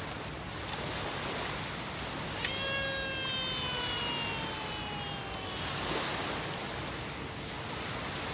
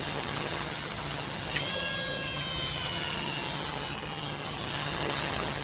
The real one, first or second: first